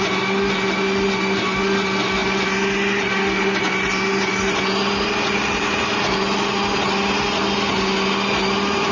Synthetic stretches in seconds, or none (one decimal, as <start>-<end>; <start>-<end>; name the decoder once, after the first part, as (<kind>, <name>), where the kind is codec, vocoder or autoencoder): none